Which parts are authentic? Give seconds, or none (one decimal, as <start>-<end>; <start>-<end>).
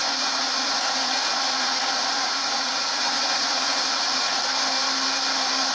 4.4-5.7